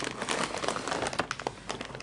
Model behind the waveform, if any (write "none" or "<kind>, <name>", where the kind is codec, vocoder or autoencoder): none